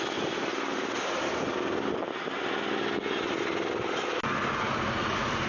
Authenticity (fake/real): real